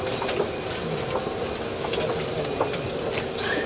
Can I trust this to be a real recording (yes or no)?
yes